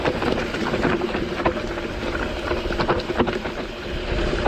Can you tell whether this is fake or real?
real